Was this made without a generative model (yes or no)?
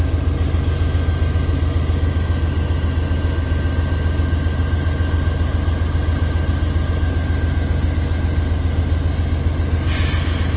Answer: yes